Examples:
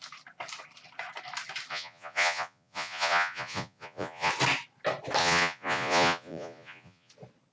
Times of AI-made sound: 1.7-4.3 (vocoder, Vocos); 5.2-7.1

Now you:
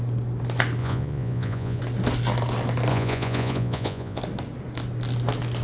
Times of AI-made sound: 0.8-1.8 (vocoder, Vocos); 2.9-4.2

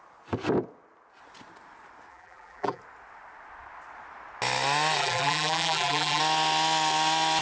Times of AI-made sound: 2.1-2.8 (vocoder, BigVGAN v2); 5.0-6.2

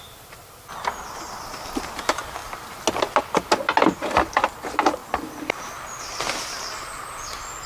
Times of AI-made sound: 5.0-6.8 (vocoder, BigVGAN v2)

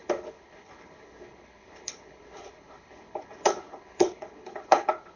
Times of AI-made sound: 0.0-5.2 (codec, HILCodec)